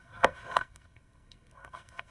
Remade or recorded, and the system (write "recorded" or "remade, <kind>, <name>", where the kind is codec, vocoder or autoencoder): remade, codec, SNAC